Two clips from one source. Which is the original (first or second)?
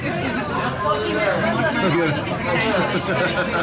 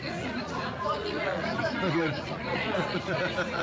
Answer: first